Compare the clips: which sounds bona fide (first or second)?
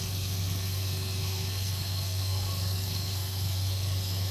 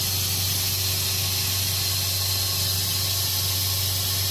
second